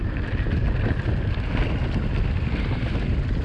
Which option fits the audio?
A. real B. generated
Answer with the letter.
A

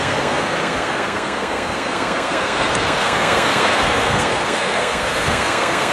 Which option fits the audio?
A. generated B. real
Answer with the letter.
A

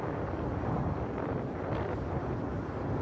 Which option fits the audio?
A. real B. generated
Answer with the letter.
A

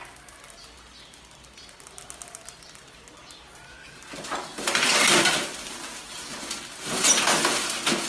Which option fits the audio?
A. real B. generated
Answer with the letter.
A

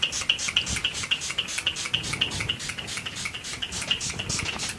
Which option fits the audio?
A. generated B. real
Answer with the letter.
B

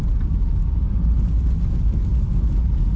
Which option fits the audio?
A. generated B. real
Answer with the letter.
B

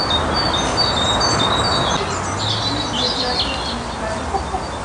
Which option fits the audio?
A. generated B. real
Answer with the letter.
B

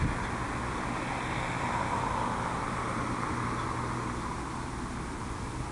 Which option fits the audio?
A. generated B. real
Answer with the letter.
B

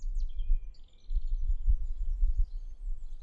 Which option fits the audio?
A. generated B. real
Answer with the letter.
B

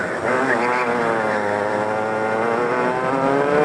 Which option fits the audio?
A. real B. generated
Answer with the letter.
A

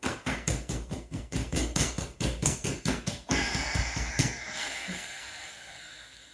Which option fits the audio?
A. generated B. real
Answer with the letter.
A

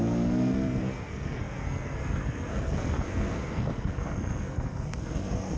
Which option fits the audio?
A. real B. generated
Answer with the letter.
B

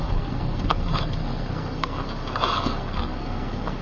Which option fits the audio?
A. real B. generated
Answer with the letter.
B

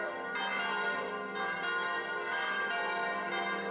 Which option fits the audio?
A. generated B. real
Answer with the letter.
B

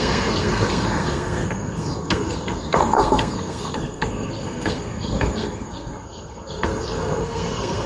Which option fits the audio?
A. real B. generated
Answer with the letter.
B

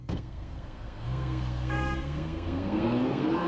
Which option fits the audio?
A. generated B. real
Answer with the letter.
A